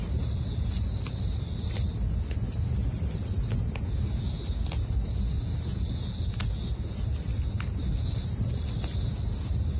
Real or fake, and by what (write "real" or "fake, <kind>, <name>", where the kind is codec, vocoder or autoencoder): real